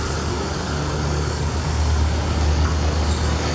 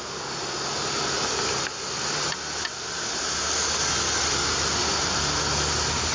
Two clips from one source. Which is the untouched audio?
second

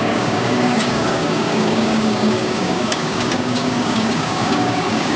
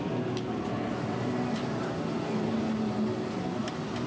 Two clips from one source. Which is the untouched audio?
second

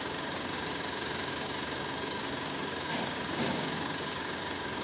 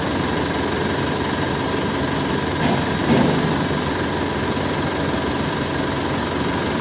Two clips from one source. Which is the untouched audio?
second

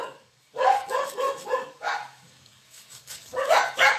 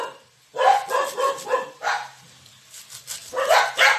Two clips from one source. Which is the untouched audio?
second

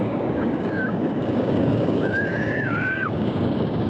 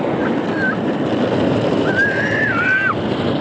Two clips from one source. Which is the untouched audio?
second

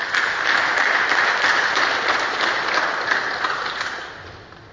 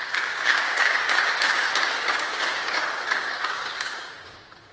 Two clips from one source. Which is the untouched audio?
first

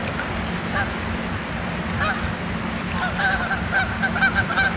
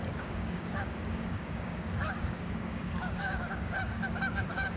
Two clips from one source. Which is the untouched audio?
first